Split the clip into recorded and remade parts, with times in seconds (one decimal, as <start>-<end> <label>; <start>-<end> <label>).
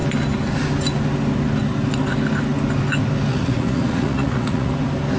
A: 0.0-3.3 recorded; 3.3-4.7 remade; 4.7-5.2 recorded